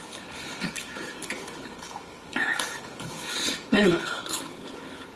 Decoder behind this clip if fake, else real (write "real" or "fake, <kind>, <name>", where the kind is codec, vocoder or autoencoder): fake, codec, HILCodec